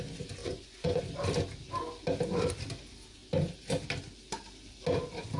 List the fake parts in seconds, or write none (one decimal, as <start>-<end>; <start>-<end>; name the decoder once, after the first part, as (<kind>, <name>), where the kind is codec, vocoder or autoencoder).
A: 0.4-1.0 (vocoder, Vocos)